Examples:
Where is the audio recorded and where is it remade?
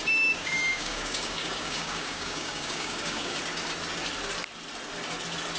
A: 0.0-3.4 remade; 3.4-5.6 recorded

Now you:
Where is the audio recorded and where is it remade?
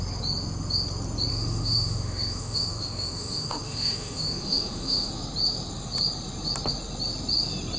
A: 0.0-1.3 recorded; 1.3-5.1 remade; 5.1-7.8 recorded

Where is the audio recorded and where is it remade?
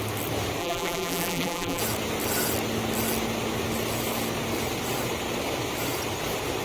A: 0.0-0.6 recorded; 0.6-1.8 remade; 1.8-6.6 recorded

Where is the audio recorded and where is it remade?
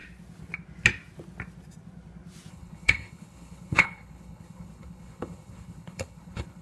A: 0.0-2.5 recorded; 2.5-6.6 remade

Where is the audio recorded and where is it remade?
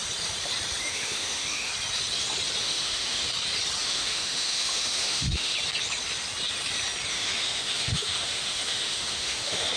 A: 0.0-0.8 recorded; 0.8-1.7 remade; 1.7-2.6 recorded; 2.6-3.2 remade; 3.2-3.8 recorded; 3.8-5.5 remade; 5.5-7.1 recorded; 7.1-9.8 remade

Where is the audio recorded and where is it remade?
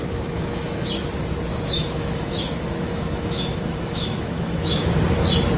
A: 0.0-0.9 remade; 0.9-1.5 recorded; 1.5-4.9 remade; 4.9-5.6 recorded